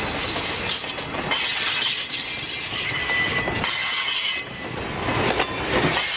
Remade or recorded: recorded